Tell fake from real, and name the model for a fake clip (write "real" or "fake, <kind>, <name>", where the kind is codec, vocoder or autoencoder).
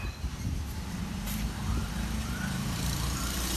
fake, vocoder, BigVGAN v2